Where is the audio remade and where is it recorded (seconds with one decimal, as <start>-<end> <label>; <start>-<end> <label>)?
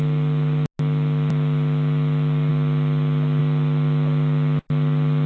0.0-5.3 recorded